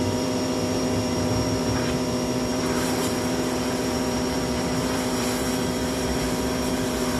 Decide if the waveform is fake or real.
fake